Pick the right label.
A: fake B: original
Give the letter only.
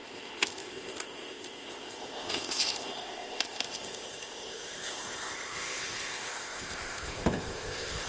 A